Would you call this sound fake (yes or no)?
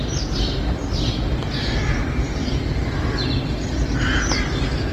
no